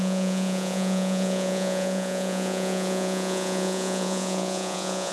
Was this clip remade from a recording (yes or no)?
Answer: yes